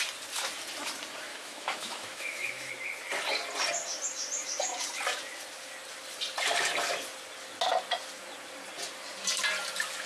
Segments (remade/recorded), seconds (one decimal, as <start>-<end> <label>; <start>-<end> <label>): 0.0-1.3 recorded; 1.3-2.7 remade; 2.7-10.1 recorded

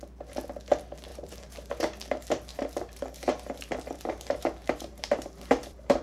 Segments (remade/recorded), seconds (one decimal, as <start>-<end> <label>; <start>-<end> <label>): 0.0-1.1 recorded; 1.1-1.7 remade; 1.7-2.5 recorded; 2.5-6.0 remade